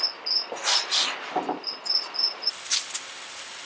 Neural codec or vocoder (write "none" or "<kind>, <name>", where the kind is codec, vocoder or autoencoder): none